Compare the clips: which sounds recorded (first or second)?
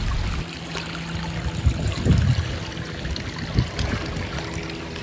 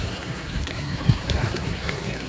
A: first